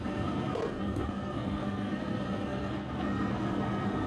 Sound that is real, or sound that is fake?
fake